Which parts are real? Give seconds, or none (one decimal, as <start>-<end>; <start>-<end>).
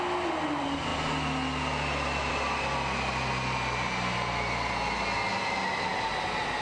0.0-6.6